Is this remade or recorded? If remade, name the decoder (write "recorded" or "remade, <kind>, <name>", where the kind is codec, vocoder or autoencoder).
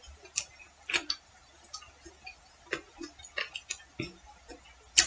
recorded